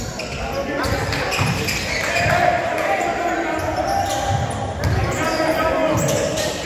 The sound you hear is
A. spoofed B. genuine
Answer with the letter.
B